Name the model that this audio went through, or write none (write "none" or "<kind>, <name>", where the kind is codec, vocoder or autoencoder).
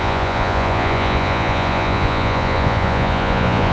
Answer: vocoder, Vocos